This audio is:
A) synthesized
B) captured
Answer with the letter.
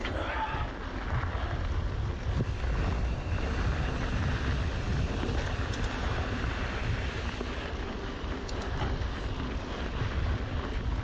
B